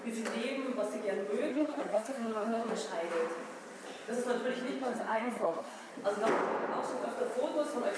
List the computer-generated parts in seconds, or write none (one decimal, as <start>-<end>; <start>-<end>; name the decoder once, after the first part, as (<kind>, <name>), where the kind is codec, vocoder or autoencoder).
1.5-2.7 (codec, SNAC); 4.8-5.9